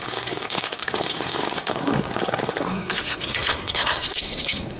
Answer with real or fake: fake